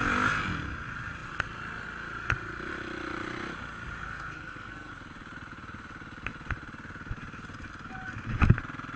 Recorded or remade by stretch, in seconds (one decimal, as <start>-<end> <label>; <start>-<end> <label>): 0.0-4.0 recorded; 4.0-4.9 remade; 4.9-9.0 recorded